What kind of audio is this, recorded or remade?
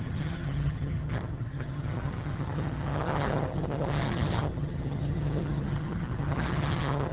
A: remade